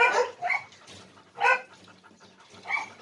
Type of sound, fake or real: real